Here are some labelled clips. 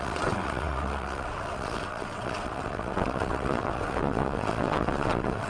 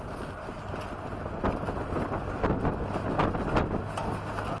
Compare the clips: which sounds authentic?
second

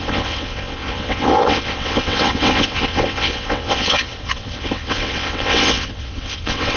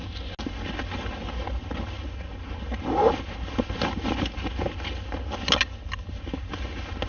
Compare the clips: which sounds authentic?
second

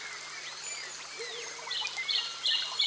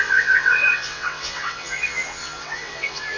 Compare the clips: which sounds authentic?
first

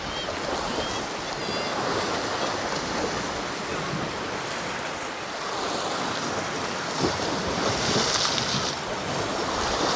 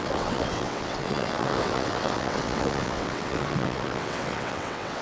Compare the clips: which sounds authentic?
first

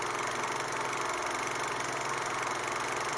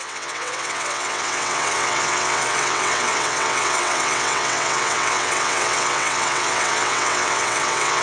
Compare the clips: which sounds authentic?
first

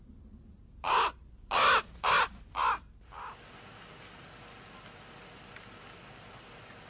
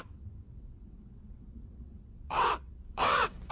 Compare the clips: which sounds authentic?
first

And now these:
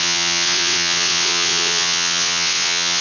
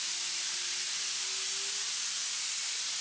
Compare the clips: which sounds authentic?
second